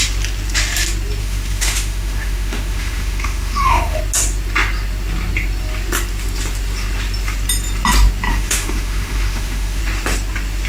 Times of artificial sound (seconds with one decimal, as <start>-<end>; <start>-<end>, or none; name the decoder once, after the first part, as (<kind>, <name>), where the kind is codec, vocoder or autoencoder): 1.2-4.0 (autoencoder, DAC-VAE); 8.3-9.8